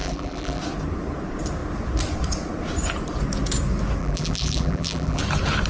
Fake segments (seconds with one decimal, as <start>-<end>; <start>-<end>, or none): 0.0-0.6; 4.0-5.2

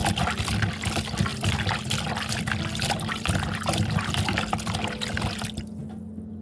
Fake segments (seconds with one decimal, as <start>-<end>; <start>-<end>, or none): 1.3-4.5

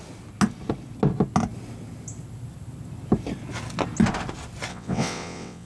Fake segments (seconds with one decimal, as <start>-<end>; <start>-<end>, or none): 4.7-5.7

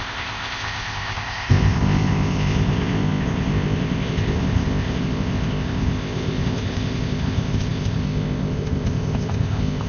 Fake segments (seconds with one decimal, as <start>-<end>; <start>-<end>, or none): 0.0-9.9